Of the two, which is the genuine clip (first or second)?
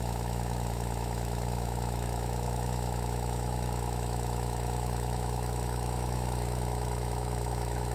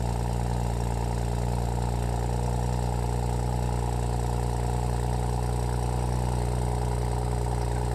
second